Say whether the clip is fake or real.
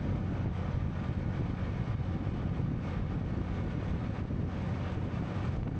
real